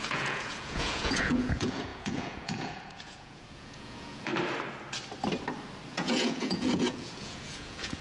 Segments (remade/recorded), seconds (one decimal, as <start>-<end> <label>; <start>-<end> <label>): 0.0-4.3 remade; 4.3-5.9 recorded; 5.9-8.0 remade